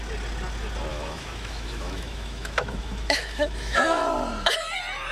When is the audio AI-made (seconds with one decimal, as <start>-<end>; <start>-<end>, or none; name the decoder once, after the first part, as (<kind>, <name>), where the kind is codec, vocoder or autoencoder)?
0.9-4.0 (autoencoder, DAC-VAE)